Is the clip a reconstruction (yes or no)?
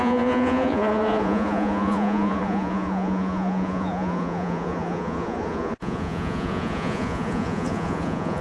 yes